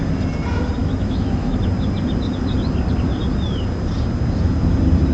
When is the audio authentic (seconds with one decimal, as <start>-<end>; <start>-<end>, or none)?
0.0-0.8; 1.6-5.1